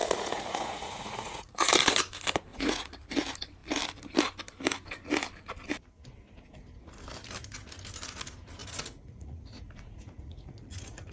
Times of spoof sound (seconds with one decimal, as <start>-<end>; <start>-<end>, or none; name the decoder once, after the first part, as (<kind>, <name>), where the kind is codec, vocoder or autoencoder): 0.0-1.7 (vocoder, Vocos); 2.5-3.0; 8.6-11.1